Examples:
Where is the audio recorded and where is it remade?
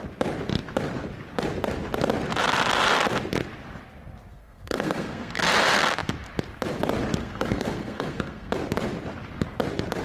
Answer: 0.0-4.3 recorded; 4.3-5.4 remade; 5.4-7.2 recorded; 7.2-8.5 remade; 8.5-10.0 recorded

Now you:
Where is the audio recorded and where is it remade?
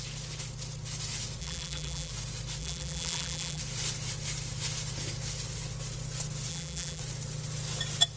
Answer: 0.0-1.4 recorded; 1.4-2.1 remade; 2.1-2.6 recorded; 2.6-3.6 remade; 3.6-6.5 recorded; 6.5-7.0 remade; 7.0-8.2 recorded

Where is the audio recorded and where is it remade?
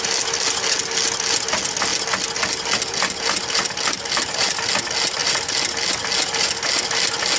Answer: 0.0-7.4 recorded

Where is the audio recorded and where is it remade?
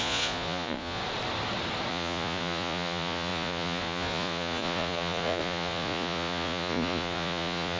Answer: 0.0-1.0 remade; 1.0-1.9 recorded; 1.9-7.8 remade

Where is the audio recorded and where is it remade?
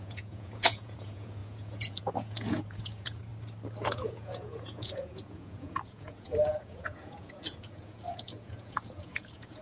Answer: 0.0-3.3 remade; 3.3-3.8 recorded; 3.8-9.6 remade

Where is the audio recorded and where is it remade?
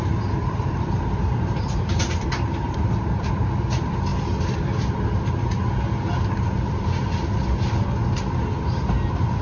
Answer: 0.0-3.3 remade; 3.3-9.4 recorded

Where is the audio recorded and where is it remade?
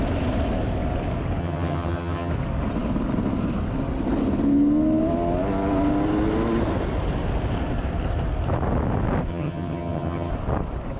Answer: 0.0-1.4 recorded; 1.4-2.3 remade; 2.3-9.3 recorded; 9.3-10.3 remade; 10.3-11.0 recorded